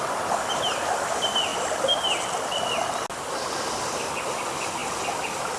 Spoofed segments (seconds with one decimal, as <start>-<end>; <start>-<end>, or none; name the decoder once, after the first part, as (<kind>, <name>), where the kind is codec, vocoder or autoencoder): none